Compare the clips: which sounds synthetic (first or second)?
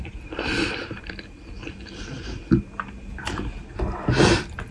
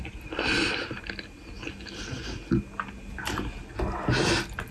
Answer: first